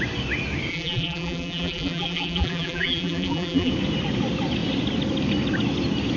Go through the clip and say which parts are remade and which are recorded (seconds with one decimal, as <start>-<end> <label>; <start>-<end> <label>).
0.0-0.7 recorded; 0.7-3.7 remade; 3.7-6.2 recorded